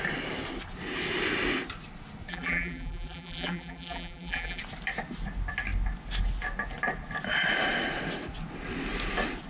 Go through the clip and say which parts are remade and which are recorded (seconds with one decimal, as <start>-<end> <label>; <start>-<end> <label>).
0.0-2.3 recorded; 2.3-4.6 remade; 4.6-9.5 recorded